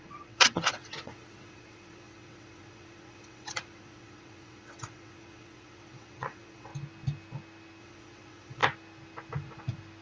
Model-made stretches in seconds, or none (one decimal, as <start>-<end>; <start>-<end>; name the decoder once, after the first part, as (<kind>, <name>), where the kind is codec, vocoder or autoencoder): 0.0-6.7 (vocoder, WaveNeXt); 7.8-8.6